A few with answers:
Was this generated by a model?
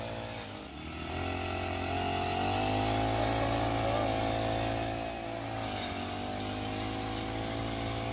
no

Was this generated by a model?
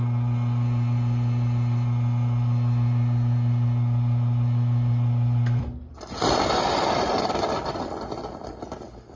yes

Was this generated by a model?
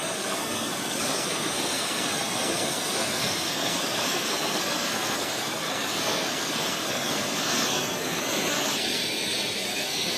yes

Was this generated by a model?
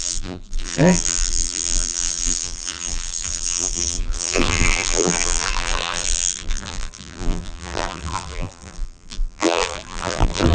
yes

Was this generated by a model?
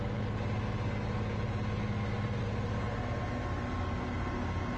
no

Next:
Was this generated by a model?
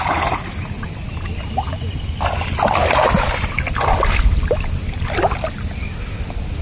no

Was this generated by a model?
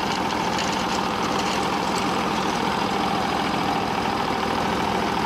yes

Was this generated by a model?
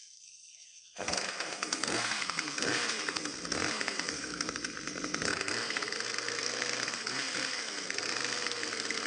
yes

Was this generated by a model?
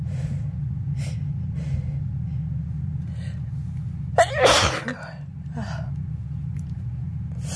no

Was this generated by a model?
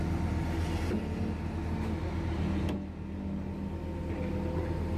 no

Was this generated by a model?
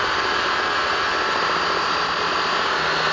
no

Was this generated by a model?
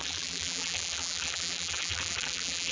yes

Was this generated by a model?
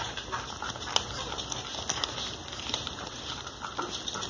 no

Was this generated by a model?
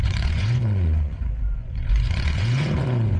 yes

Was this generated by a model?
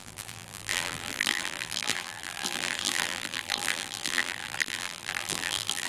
yes